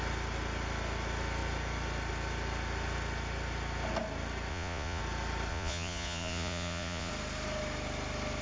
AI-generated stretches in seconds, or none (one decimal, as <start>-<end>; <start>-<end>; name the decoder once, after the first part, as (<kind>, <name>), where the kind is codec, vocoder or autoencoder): 4.5-5.0 (vocoder, Vocos); 5.5-7.1